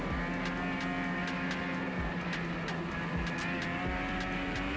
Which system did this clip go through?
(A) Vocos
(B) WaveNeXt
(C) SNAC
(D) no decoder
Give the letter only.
D